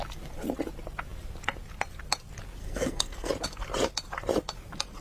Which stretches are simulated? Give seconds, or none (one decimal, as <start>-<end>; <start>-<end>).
2.6-3.3